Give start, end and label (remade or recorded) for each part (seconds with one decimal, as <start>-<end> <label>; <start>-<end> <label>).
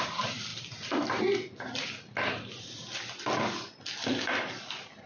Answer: 0.0-5.1 recorded